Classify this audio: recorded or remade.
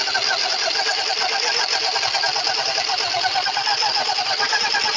recorded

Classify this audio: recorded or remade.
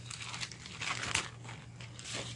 recorded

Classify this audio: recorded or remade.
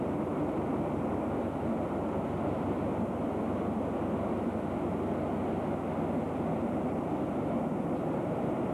recorded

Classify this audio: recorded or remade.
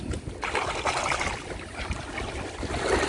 recorded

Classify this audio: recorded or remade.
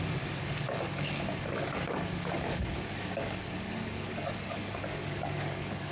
remade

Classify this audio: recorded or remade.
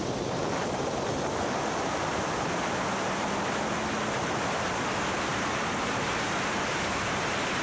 recorded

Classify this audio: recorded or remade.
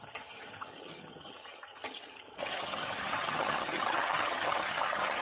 remade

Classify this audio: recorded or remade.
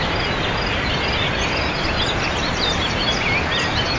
recorded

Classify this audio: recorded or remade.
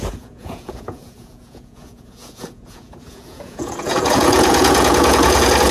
remade